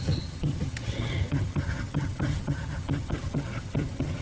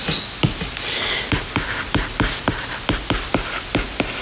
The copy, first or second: first